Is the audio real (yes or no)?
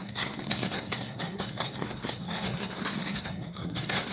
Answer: no